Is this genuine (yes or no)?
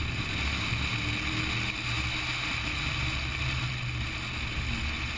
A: yes